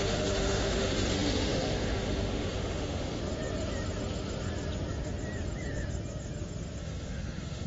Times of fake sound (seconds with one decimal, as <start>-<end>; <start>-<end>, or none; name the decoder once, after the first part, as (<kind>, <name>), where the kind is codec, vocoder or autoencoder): 0.0-3.2 (autoencoder, DAC-VAE); 6.8-7.7